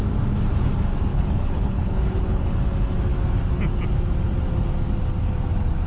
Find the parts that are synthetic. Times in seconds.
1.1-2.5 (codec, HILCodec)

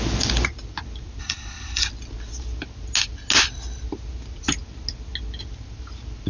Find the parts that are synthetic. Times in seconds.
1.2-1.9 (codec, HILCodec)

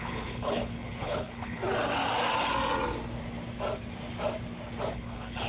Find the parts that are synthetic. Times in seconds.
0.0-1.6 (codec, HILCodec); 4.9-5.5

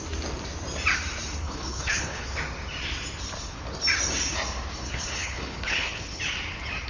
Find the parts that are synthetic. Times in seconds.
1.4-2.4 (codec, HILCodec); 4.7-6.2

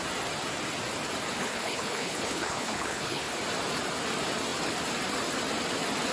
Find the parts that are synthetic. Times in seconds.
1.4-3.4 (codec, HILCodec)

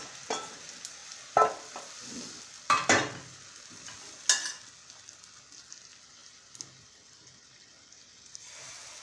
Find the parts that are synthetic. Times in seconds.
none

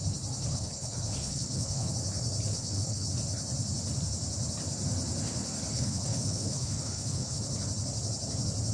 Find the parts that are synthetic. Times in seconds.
0.5-1.9 (codec, HILCodec); 2.5-3.1; 5.7-7.4